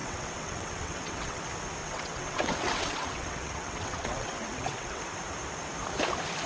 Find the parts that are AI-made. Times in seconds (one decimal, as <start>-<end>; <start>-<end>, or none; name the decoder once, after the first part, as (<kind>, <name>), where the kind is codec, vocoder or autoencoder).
0.0-1.4 (vocoder, WaveNeXt); 1.8-5.0